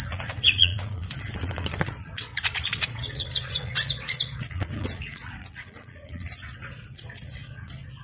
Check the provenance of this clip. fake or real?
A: fake